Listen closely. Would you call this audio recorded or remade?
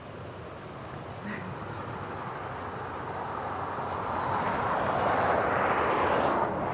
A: recorded